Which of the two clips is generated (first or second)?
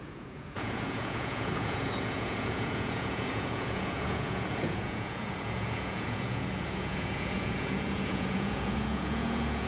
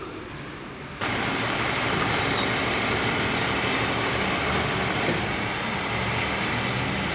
first